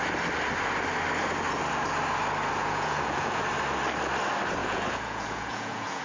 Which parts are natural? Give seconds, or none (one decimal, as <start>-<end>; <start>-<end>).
0.0-2.6; 3.4-4.6